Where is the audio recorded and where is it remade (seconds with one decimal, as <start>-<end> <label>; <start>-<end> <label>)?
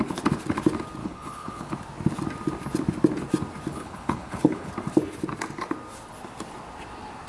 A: 0.0-1.0 recorded; 1.0-1.7 remade; 1.7-3.7 recorded; 3.7-4.7 remade; 4.7-7.3 recorded